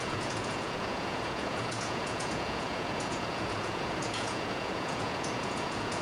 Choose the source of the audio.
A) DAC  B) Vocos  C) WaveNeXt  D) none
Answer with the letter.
B